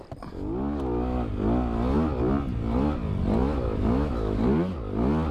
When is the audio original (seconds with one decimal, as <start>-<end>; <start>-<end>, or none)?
0.0-3.4; 4.4-5.3